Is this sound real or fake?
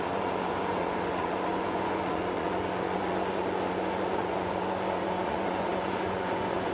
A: fake